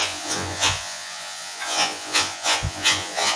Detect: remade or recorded remade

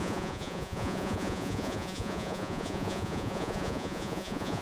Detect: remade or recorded remade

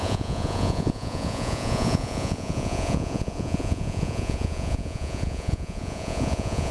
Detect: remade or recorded remade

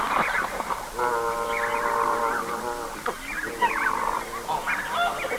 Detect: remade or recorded recorded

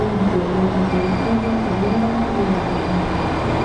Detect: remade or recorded recorded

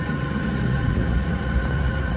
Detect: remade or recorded remade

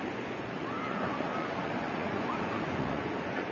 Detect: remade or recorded remade